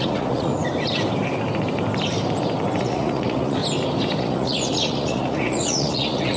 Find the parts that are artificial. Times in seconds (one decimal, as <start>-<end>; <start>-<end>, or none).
0.0-0.5; 2.8-3.6; 4.2-6.4